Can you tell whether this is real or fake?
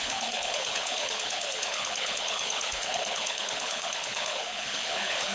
fake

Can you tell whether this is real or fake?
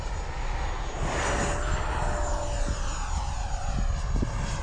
real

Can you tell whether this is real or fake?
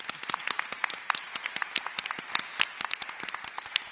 real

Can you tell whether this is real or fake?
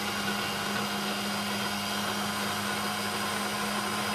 real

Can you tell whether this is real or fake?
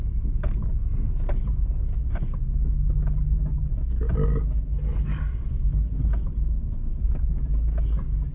real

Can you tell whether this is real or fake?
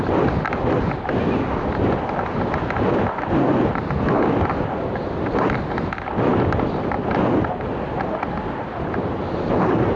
real